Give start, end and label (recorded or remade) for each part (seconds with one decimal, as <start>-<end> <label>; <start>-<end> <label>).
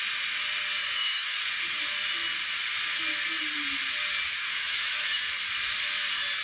0.0-0.8 recorded; 0.8-1.5 remade; 1.5-4.4 recorded; 4.4-5.2 remade; 5.2-6.4 recorded